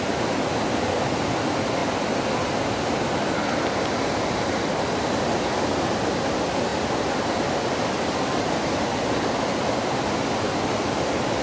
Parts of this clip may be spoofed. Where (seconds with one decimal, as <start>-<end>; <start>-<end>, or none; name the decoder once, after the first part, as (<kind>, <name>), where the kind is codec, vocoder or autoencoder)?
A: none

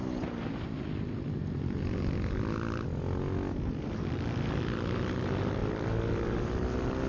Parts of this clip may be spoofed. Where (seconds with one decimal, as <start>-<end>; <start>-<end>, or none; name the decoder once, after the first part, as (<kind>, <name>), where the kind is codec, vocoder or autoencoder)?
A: 5.6-6.6 (vocoder, BigVGAN v2)

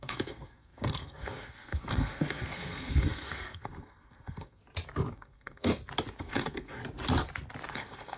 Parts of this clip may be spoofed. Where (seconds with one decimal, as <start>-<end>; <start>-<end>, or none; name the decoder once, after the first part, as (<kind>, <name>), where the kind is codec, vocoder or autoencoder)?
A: 0.0-4.6 (codec, SNAC); 5.1-5.7; 6.2-6.8; 7.7-8.2